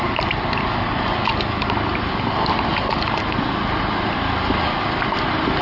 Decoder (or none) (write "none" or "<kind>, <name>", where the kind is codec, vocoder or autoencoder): none